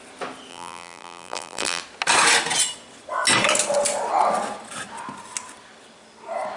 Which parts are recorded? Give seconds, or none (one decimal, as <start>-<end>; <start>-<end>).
0.0-0.5; 1.8-6.6